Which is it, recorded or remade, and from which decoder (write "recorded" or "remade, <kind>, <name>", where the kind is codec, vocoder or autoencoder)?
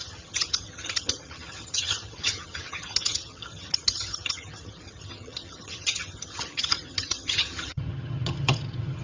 remade, vocoder, HiFi-GAN